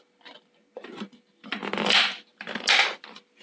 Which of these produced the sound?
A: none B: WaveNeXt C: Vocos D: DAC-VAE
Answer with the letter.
A